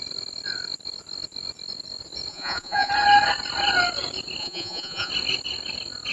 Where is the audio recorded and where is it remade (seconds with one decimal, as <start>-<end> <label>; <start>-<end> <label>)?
0.0-2.3 recorded; 2.3-2.9 remade; 2.9-4.4 recorded; 4.4-5.1 remade; 5.1-6.1 recorded